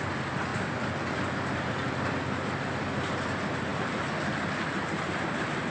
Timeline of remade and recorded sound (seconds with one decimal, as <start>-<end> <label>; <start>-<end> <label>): 0.0-0.5 recorded; 0.5-2.1 remade; 2.1-3.7 recorded; 3.7-5.1 remade; 5.1-5.7 recorded

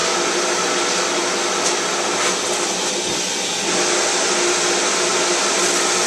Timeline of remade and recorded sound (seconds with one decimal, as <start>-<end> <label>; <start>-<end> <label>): 0.0-6.1 recorded

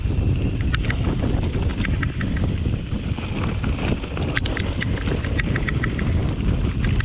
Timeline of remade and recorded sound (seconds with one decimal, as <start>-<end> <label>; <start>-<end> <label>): 0.0-7.0 recorded

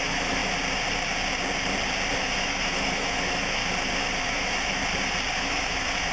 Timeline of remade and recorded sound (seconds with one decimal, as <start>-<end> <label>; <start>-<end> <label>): 0.0-0.4 remade; 0.4-2.2 recorded; 2.2-3.6 remade; 3.6-4.2 recorded; 4.2-4.8 remade; 4.8-5.4 recorded; 5.4-6.1 remade

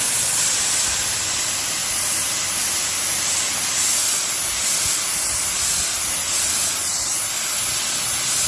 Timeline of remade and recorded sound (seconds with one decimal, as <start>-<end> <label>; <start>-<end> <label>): 0.0-8.5 recorded

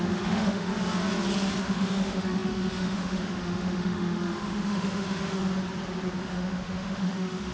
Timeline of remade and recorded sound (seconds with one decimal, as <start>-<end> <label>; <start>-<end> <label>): 0.0-0.7 remade; 0.7-1.6 recorded; 1.6-5.4 remade; 5.4-6.2 recorded; 6.2-7.5 remade

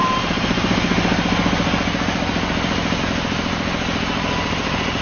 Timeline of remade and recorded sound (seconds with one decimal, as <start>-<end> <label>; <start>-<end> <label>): 0.0-5.0 recorded

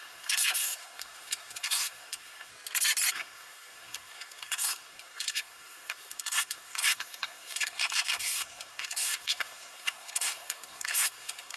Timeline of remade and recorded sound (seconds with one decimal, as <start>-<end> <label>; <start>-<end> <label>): 0.0-2.5 remade; 2.5-3.1 recorded; 3.1-11.6 remade